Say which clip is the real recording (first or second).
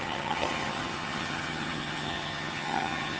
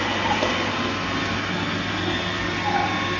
second